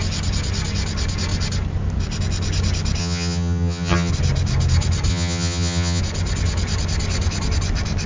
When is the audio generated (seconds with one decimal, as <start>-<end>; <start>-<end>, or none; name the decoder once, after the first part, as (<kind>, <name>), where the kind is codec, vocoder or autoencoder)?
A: 3.0-4.1 (vocoder, HiFi-GAN); 5.1-6.0